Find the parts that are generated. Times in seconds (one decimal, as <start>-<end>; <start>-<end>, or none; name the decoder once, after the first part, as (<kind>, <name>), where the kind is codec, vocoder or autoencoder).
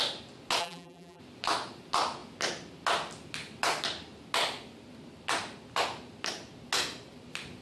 0.6-1.2 (vocoder, BigVGAN v2)